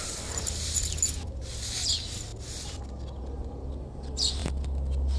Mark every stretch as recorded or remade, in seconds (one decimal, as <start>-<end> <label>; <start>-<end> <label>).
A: 0.0-5.2 recorded